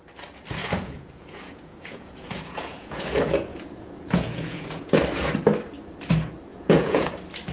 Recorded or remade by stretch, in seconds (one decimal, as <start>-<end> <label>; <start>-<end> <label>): 0.0-0.6 recorded; 0.6-3.1 remade; 3.1-3.5 recorded; 3.5-5.0 remade; 5.0-6.5 recorded; 6.5-7.1 remade; 7.1-7.5 recorded